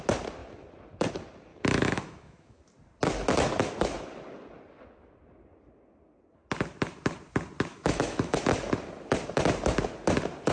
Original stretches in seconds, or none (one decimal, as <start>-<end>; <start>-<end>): 0.0-1.5; 2.6-7.7; 8.4-10.5